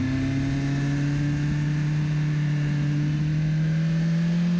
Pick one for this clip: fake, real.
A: real